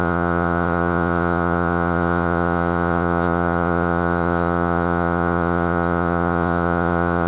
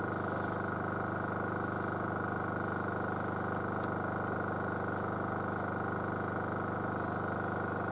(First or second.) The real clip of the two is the second